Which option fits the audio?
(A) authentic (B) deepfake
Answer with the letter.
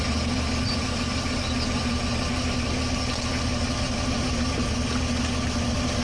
A